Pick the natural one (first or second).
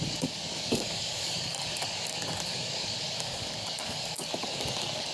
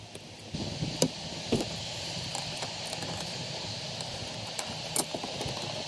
second